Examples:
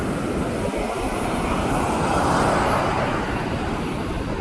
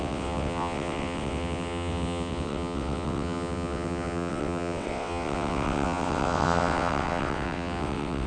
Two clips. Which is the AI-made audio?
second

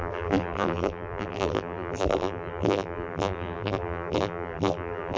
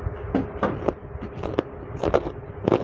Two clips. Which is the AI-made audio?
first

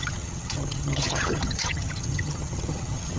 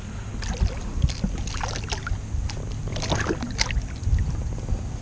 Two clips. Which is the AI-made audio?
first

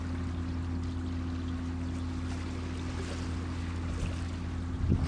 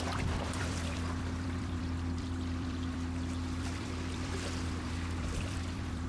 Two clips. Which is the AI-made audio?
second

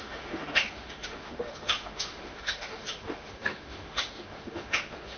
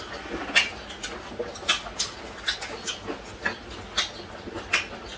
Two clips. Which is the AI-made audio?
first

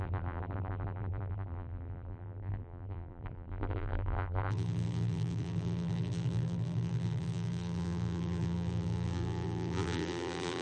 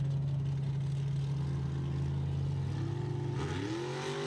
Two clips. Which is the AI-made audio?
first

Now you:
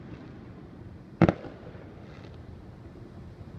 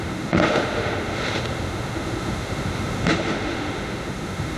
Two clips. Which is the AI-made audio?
second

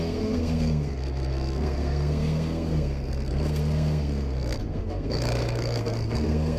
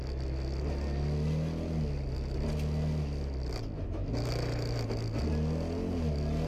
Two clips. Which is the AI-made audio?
first